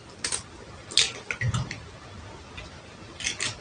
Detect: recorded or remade recorded